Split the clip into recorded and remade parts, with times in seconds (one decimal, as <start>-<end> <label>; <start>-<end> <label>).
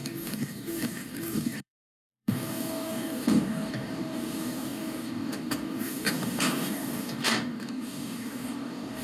0.0-9.0 remade